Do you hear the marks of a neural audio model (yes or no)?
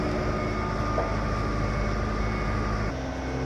no